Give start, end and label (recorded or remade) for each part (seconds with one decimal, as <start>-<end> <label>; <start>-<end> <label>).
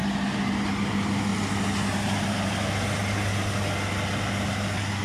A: 0.0-5.0 recorded